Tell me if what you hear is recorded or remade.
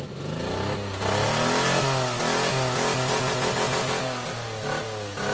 recorded